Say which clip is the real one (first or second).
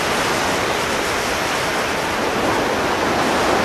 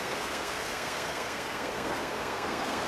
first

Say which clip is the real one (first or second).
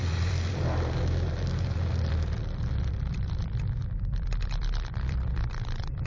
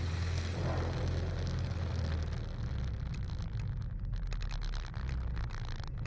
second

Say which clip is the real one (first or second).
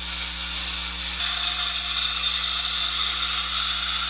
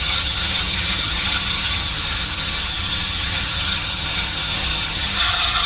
first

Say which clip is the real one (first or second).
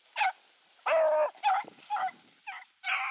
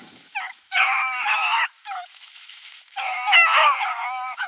first